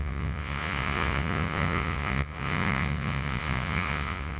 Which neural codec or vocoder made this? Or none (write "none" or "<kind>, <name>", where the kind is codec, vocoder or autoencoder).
vocoder, Vocos